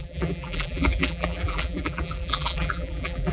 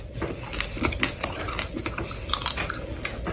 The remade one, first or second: first